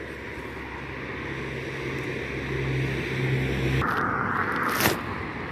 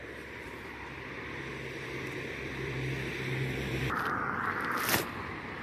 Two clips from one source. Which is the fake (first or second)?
second